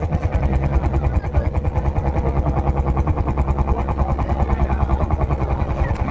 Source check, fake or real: fake